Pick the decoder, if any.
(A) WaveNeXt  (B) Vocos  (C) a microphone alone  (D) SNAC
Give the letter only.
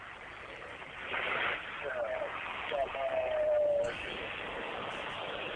C